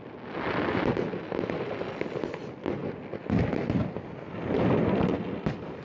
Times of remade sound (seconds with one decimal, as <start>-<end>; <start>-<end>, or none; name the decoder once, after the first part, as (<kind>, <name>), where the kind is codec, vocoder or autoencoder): none